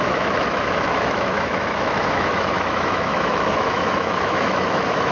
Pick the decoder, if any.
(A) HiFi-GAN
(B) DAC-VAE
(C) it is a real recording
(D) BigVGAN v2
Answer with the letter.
B